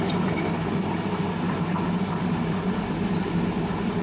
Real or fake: fake